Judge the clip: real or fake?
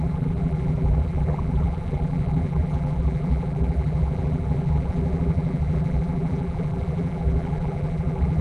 fake